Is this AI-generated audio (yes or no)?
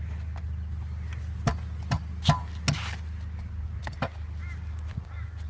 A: no